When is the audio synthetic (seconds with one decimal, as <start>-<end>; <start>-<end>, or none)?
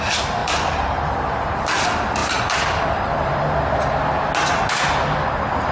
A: 0.4-1.6; 2.2-3.4